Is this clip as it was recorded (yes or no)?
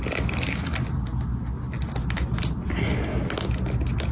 yes